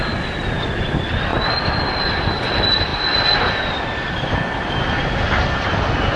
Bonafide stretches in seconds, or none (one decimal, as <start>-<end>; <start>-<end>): 0.0-6.2